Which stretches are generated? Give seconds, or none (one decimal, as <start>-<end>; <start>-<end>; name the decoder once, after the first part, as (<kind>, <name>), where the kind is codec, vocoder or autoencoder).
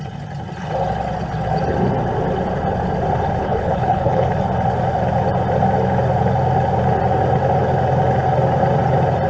3.4-4.3 (codec, HILCodec)